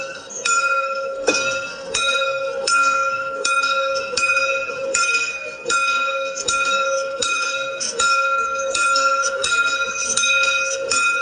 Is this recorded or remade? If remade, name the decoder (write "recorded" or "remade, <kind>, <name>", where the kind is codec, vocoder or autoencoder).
remade, codec, SNAC